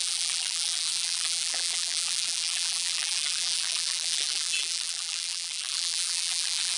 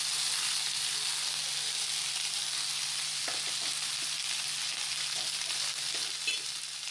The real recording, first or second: second